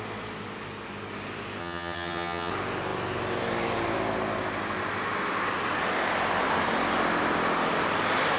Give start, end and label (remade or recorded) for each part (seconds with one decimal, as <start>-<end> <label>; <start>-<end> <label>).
0.0-1.6 recorded; 1.6-2.5 remade; 2.5-8.4 recorded